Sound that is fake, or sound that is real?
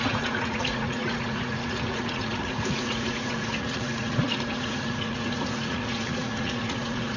fake